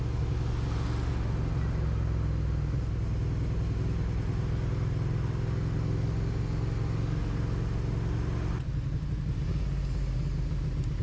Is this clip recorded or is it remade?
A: recorded